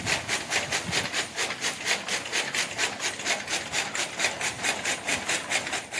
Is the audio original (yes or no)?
yes